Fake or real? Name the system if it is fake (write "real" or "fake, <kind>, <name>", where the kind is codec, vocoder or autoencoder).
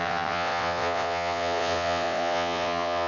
fake, vocoder, WaveNeXt